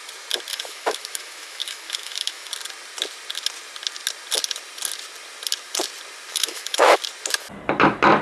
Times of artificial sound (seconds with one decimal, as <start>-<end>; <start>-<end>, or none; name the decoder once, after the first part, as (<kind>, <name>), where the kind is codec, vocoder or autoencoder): 0.5-2.5 (autoencoder, DAC-VAE); 6.3-7.0